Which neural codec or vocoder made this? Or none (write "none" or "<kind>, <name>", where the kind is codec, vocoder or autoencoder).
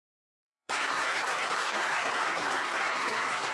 codec, SNAC